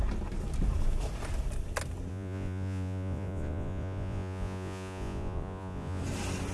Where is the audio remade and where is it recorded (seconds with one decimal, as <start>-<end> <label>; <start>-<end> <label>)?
0.0-2.1 recorded; 2.1-6.0 remade; 6.0-6.5 recorded